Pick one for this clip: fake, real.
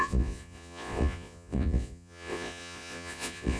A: fake